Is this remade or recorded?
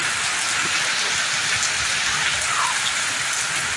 recorded